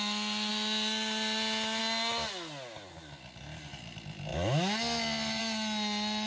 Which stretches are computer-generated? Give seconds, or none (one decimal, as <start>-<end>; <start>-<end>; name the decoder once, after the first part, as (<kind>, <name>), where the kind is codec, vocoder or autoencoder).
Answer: none